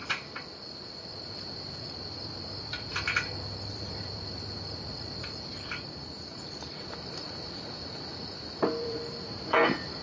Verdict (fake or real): fake